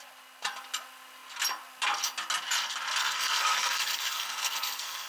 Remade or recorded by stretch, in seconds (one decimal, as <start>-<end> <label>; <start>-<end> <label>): 0.0-3.0 recorded; 3.0-5.1 remade